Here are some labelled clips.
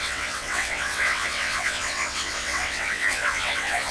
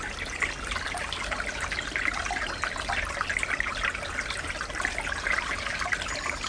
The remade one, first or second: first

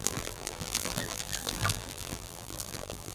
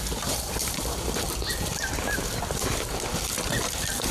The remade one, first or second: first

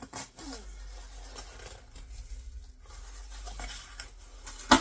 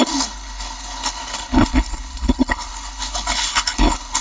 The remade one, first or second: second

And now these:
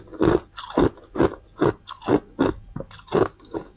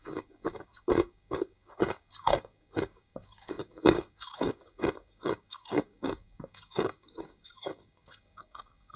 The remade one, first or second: second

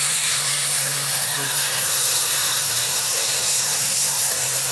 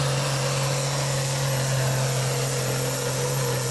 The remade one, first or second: first